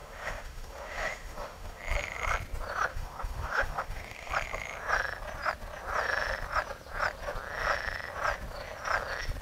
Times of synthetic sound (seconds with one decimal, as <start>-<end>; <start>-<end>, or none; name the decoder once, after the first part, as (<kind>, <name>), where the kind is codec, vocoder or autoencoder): 0.0-1.8 (autoencoder, DAC-VAE); 2.9-4.3